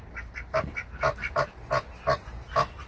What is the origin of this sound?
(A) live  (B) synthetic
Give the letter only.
A